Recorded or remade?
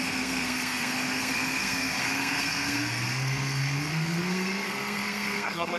remade